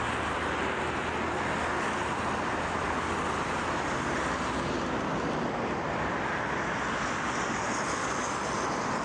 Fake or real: real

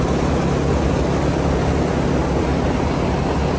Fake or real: real